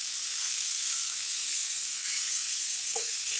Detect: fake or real fake